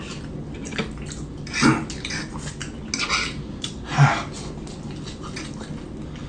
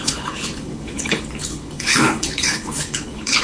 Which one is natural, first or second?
first